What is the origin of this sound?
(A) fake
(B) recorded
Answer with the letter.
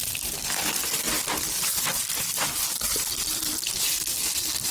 A